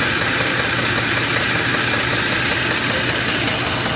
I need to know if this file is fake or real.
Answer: real